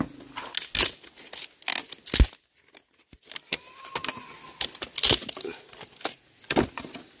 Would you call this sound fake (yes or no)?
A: no